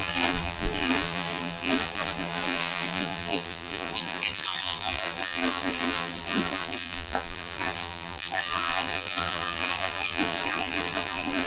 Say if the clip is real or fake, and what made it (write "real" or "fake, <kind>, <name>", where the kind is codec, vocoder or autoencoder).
fake, vocoder, BigVGAN v2